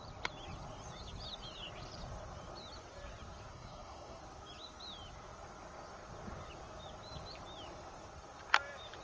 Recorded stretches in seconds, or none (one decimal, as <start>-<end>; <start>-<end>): 0.0-3.5; 4.2-9.0

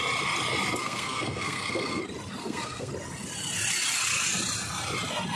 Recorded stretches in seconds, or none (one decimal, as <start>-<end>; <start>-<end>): 0.0-0.8; 2.0-2.4; 2.9-5.4

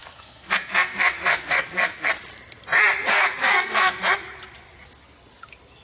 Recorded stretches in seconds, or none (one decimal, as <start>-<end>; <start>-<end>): 2.1-3.1; 4.0-5.8

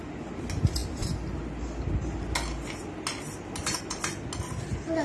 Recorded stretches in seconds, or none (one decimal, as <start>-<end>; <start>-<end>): 0.0-5.0

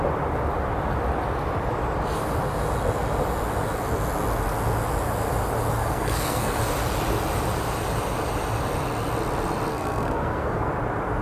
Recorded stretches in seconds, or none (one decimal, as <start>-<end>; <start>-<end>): 0.0-5.8; 6.6-9.7; 10.7-11.2